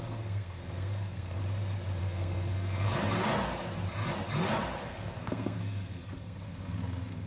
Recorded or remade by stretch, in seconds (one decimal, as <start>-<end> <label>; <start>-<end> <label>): 0.0-1.4 remade; 1.4-2.0 recorded; 2.0-2.9 remade; 2.9-4.8 recorded; 4.8-7.3 remade